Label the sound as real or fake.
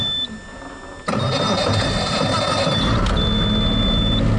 real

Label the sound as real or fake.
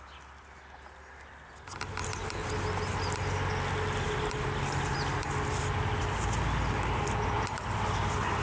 real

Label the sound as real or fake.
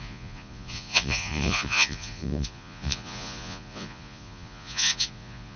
fake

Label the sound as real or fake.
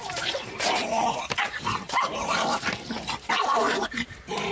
fake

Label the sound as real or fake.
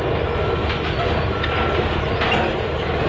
real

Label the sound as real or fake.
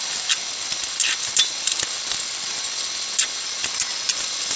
real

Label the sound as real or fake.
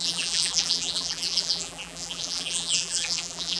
fake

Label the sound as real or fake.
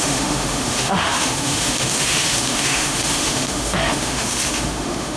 fake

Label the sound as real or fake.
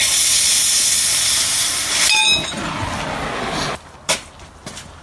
real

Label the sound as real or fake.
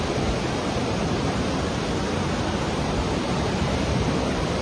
real